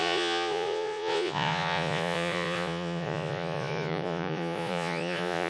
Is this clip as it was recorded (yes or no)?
no